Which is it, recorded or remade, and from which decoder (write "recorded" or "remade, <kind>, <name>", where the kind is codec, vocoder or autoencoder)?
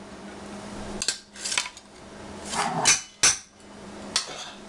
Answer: recorded